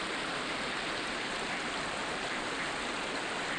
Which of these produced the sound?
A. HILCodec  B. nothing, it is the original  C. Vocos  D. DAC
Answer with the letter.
B